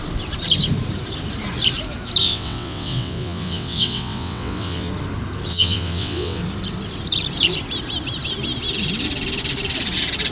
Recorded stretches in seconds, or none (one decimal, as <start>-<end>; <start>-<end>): 0.0-2.2; 4.9-5.5; 6.4-10.3